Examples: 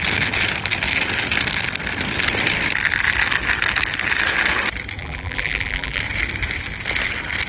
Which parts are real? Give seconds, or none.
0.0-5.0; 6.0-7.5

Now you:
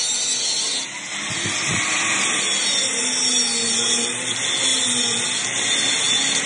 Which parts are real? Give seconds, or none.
0.0-6.5

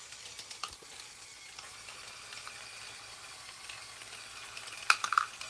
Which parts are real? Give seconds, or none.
0.0-5.5

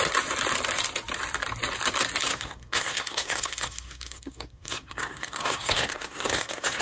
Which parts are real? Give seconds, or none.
0.0-2.3